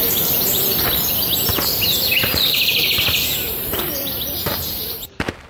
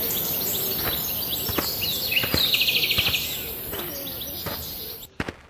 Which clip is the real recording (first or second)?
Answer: second